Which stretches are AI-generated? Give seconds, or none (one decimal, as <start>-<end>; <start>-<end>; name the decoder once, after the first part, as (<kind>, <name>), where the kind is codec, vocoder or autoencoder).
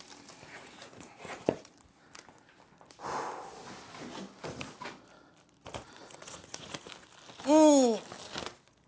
0.5-1.7 (vocoder, Vocos); 5.7-6.9